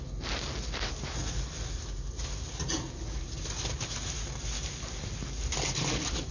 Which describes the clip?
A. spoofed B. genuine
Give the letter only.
B